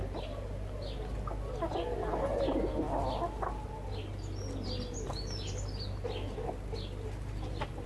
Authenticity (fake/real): real